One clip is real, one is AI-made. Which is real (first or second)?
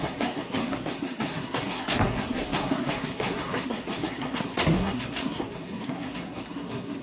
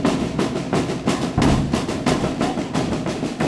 second